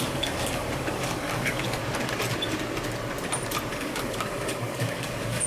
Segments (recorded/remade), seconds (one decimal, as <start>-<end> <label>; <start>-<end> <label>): 0.0-1.8 remade; 1.8-3.7 recorded; 3.7-5.5 remade